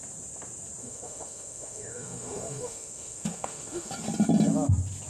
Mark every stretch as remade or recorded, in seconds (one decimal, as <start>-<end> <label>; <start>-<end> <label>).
0.0-0.8 recorded; 0.8-3.9 remade; 3.9-5.1 recorded